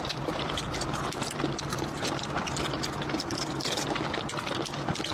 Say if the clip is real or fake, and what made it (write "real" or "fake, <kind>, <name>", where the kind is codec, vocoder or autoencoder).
real